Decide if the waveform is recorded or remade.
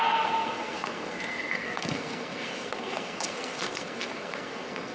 remade